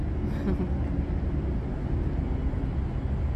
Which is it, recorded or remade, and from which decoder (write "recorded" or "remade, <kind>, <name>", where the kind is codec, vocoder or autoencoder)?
recorded